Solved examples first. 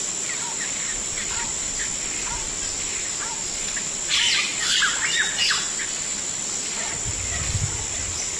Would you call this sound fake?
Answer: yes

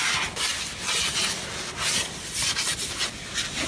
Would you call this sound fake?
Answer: no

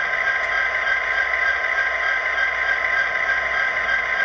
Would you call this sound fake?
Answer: no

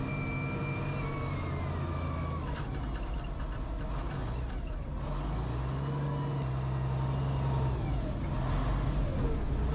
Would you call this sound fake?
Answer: no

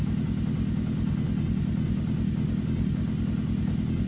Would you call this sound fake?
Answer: no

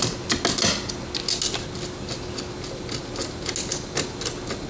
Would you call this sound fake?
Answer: no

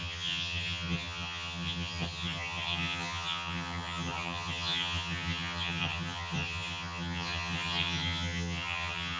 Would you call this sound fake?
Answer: yes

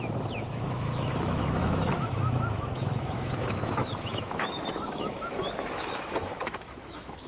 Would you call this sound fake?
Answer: yes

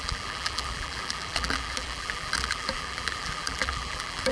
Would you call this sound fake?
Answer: yes